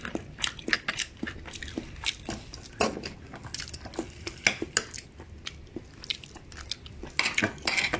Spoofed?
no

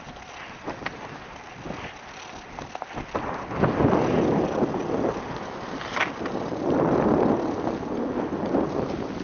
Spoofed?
no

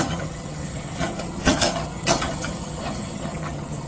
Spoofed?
yes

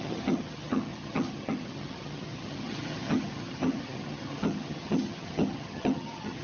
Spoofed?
yes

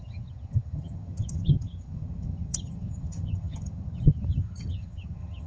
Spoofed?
yes